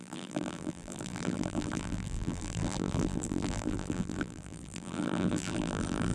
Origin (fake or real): fake